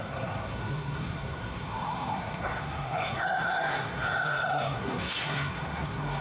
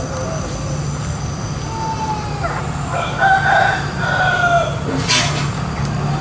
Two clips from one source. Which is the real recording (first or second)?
second